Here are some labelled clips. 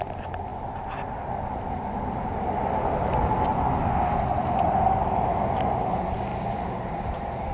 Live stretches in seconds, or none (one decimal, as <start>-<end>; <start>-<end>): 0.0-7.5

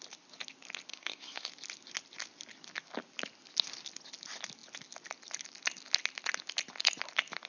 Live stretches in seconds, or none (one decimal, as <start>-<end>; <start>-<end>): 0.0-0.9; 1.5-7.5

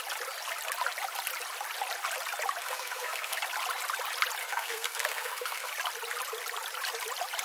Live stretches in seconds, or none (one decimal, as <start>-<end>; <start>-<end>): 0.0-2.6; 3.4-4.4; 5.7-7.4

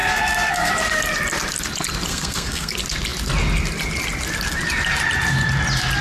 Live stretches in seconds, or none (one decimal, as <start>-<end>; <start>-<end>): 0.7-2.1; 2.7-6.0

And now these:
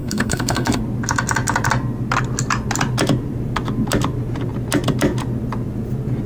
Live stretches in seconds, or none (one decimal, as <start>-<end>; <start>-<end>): 0.8-6.3